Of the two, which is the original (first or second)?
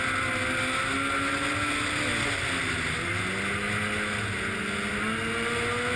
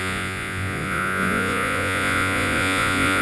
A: first